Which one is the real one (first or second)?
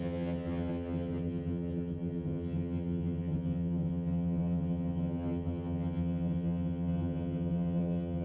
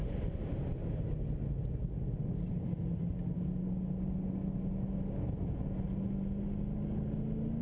second